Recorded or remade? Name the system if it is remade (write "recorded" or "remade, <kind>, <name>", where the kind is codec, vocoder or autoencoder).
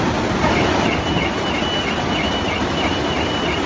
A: recorded